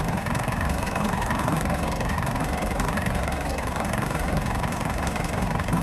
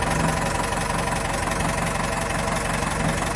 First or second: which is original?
second